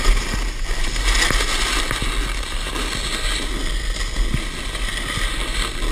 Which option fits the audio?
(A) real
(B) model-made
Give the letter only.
A